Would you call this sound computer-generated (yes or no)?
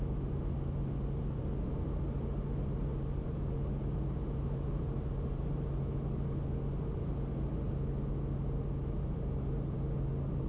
no